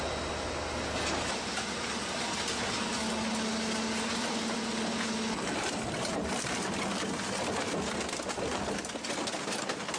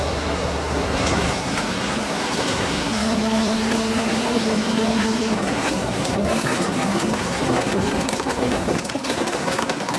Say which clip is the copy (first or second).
second